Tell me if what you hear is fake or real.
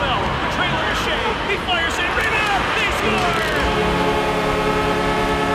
real